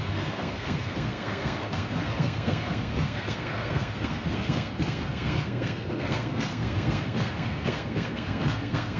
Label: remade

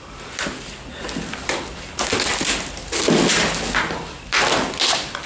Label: recorded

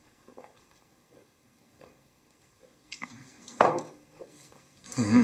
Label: remade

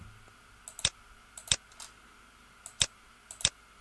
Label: recorded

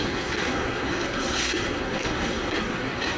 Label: remade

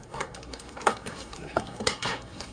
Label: remade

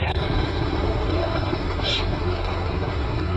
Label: remade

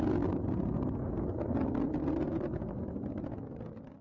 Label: recorded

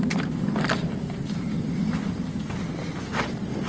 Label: recorded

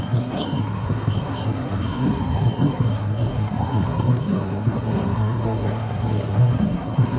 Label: remade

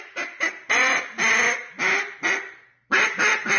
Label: recorded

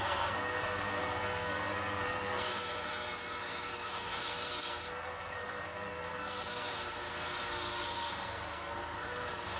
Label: remade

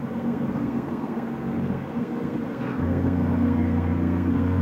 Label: remade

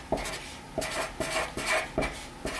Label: recorded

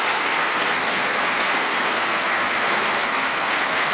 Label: remade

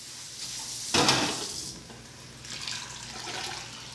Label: recorded